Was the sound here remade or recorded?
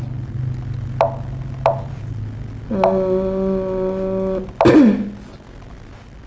recorded